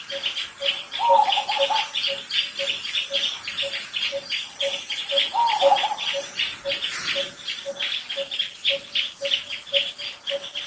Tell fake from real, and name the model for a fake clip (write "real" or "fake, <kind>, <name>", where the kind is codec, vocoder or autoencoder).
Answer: real